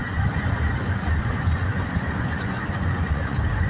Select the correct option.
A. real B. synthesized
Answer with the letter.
B